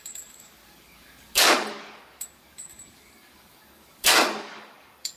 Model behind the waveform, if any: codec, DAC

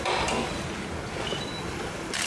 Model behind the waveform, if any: none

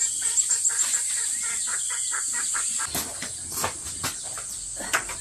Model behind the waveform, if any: none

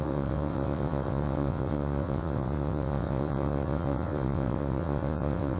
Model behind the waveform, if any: vocoder, WaveNeXt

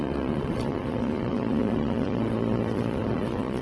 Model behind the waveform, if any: vocoder, Vocos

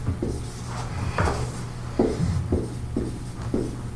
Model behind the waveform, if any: none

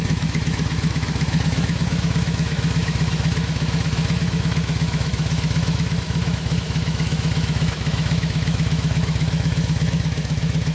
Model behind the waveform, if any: autoencoder, DAC-VAE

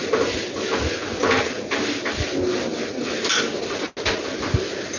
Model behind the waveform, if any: none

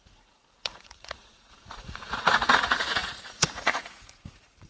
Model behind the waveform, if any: vocoder, Vocos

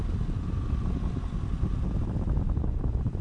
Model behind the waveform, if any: none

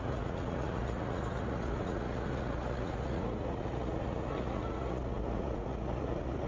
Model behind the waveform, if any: vocoder, Vocos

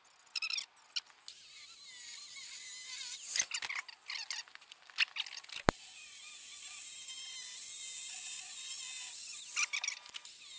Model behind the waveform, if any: none